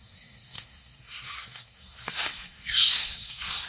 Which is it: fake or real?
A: fake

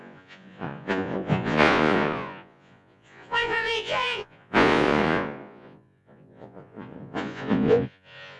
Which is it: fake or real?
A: fake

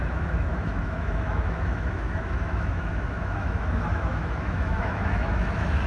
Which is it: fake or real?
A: fake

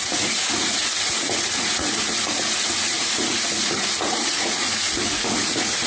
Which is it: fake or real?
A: fake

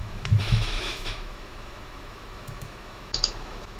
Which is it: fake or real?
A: fake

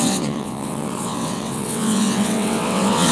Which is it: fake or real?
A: fake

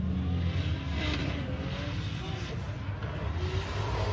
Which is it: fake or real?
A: real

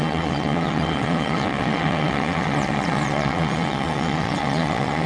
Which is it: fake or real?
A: fake